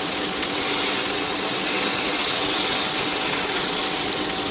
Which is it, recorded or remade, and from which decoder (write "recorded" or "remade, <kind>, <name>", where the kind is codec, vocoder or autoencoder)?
remade, vocoder, WaveNeXt